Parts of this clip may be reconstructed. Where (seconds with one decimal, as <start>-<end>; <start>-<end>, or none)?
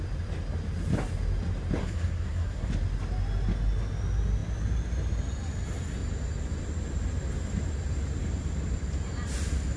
1.8-2.7